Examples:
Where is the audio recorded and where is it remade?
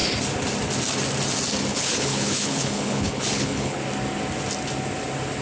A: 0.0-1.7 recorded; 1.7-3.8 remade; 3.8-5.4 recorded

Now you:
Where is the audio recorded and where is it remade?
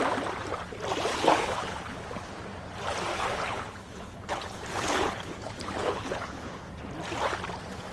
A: 0.0-1.1 recorded; 1.1-2.0 remade; 2.0-3.1 recorded; 3.1-6.7 remade; 6.7-7.9 recorded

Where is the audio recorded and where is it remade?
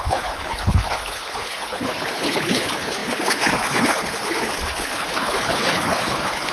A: 0.0-6.5 remade